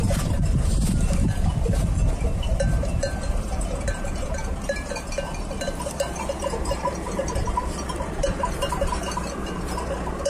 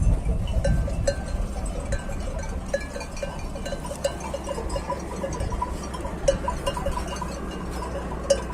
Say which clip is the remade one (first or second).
first